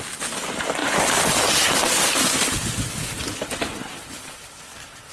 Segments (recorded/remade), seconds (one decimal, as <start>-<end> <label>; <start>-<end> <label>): 0.0-5.1 recorded